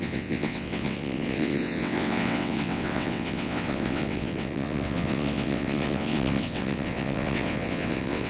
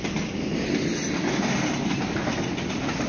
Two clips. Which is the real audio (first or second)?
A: second